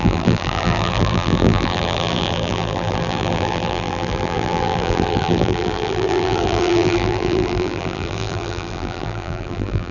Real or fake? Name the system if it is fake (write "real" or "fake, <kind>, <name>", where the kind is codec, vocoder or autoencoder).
fake, vocoder, BigVGAN v2